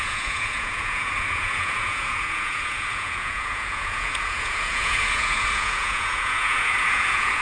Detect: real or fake fake